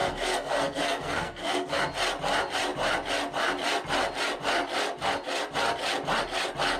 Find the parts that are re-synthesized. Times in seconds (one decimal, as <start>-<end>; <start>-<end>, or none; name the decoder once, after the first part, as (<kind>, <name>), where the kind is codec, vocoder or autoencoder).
0.0-1.8 (codec, SNAC)